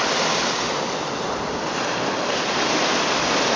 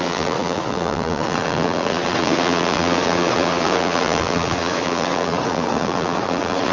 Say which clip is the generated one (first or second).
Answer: second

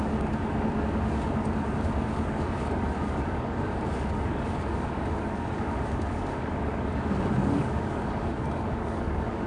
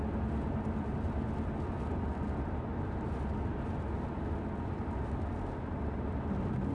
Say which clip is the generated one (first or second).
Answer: first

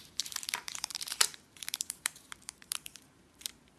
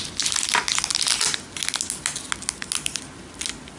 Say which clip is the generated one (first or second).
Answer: first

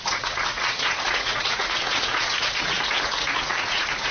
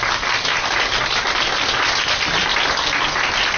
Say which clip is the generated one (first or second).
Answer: first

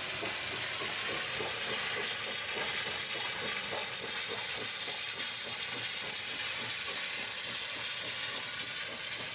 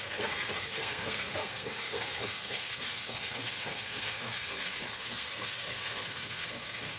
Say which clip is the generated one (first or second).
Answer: second